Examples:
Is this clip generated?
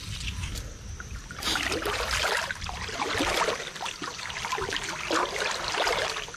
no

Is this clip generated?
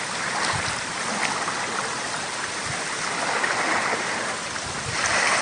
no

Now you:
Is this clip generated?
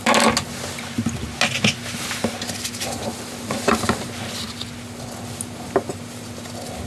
no